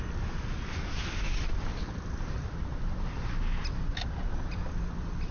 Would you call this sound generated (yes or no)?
no